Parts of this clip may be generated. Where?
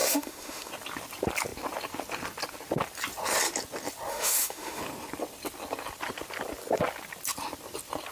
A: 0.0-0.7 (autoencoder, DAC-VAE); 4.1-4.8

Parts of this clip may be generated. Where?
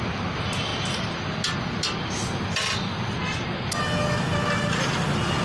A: none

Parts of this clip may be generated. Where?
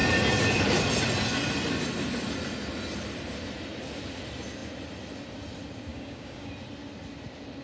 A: 5.9-6.5 (codec, DAC)